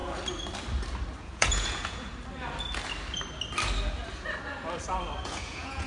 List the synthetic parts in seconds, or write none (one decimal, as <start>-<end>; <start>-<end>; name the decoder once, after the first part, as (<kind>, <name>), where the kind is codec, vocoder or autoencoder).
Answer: 1.2-2.1 (vocoder, Vocos); 5.2-5.9